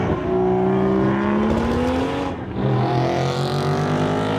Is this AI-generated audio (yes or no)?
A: no